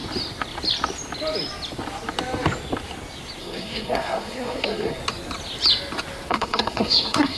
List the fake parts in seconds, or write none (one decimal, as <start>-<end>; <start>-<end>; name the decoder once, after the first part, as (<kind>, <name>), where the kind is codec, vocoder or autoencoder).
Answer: 3.4-5.0 (codec, SNAC); 6.3-7.4